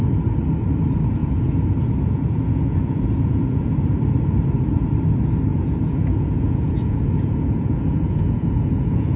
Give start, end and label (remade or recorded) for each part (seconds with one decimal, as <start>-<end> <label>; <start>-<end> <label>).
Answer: 0.0-1.2 recorded; 1.2-3.7 remade; 3.7-5.5 recorded; 5.5-9.2 remade